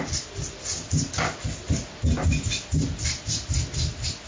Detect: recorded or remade recorded